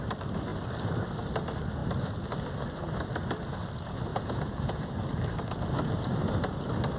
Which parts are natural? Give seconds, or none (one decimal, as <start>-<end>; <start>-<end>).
0.0-4.1; 4.9-7.0